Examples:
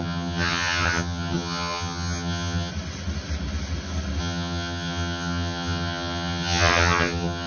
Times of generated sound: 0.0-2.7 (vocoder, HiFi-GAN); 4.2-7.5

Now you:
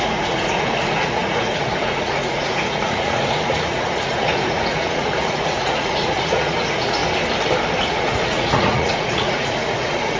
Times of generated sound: 0.0-7.0 (vocoder, Vocos); 7.8-10.2